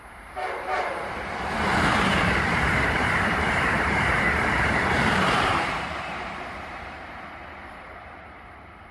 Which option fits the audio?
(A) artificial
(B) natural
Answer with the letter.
A